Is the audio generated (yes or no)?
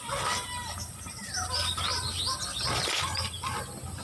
no